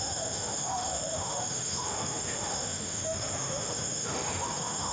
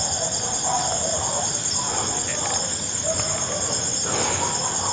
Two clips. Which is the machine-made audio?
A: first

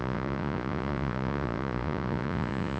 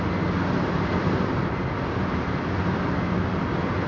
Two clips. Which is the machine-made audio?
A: first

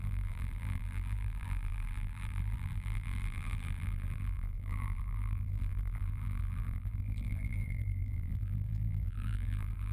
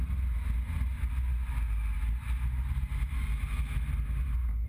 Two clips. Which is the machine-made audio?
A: first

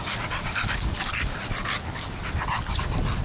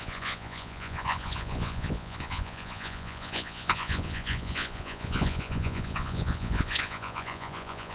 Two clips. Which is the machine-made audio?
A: second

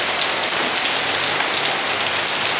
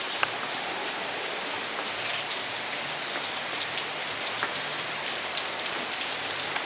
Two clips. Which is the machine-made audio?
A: second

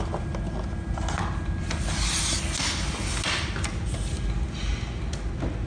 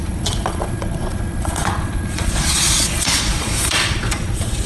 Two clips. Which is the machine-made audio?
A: second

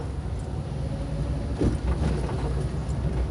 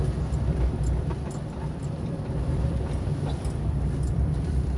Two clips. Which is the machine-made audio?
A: second